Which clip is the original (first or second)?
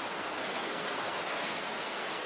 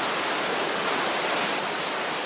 second